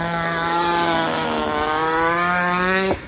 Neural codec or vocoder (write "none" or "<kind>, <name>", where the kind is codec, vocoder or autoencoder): autoencoder, DAC-VAE